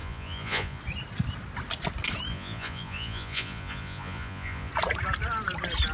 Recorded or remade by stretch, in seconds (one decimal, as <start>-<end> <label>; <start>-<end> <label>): 0.0-0.8 remade; 0.8-2.3 recorded; 2.3-4.7 remade; 4.7-5.9 recorded